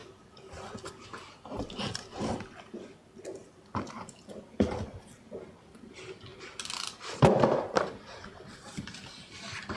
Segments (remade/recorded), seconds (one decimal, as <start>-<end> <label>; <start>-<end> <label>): 0.0-0.9 remade; 0.9-3.4 recorded; 3.4-5.4 remade; 5.4-6.3 recorded; 6.3-9.1 remade; 9.1-9.8 recorded